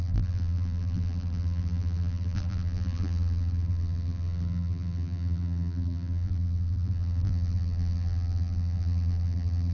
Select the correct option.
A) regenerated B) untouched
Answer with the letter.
A